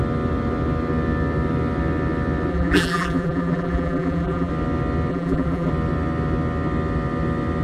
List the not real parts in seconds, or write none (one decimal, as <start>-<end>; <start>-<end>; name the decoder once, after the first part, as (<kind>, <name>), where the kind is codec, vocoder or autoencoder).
2.5-4.5 (vocoder, BigVGAN v2); 5.1-5.7